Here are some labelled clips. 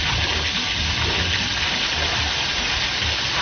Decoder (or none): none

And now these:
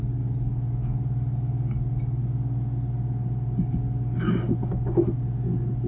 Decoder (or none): none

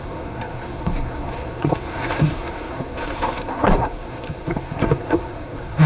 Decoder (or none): codec, SNAC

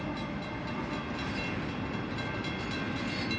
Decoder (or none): none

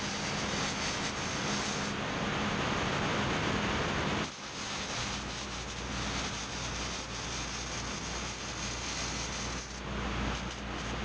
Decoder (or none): none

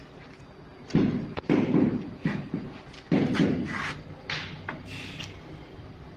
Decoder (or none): none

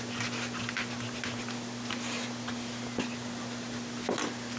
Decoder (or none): none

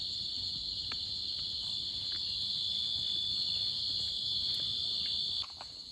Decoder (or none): none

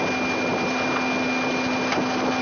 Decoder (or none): none